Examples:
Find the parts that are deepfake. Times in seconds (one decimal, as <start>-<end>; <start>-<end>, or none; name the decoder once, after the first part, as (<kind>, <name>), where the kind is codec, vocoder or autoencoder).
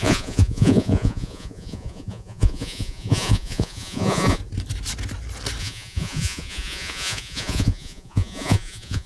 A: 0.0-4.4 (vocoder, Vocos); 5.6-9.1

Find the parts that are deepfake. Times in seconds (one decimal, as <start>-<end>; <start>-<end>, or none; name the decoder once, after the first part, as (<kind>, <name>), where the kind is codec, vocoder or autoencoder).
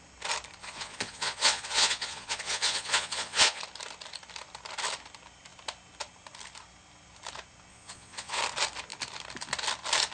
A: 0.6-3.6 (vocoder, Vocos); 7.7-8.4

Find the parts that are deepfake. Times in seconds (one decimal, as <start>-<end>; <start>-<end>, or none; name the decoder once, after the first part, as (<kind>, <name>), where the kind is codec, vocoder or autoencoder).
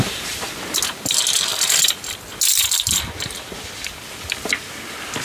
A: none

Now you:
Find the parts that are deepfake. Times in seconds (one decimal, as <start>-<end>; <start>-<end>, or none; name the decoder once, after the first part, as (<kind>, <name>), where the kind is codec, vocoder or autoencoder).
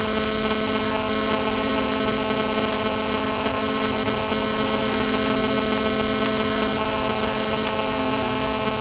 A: none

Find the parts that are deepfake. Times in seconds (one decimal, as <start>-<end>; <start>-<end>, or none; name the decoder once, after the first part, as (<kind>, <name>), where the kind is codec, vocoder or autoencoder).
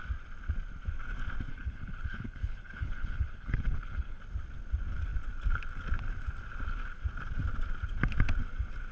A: 1.5-4.2 (codec, HILCodec)